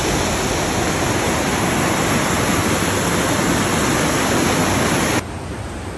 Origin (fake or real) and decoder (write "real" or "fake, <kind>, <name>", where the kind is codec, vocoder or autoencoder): real